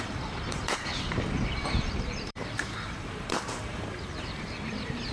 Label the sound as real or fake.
fake